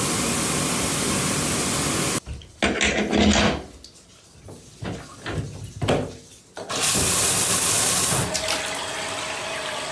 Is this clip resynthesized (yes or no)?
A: no